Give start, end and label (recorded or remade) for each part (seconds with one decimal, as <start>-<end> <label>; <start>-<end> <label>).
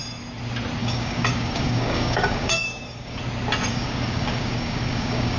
0.0-0.8 recorded; 0.8-3.2 remade; 3.2-3.7 recorded; 3.7-5.4 remade